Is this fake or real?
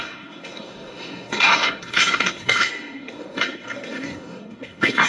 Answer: fake